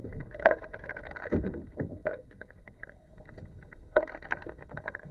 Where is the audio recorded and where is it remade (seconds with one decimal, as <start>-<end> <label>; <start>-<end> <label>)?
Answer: 0.0-5.1 remade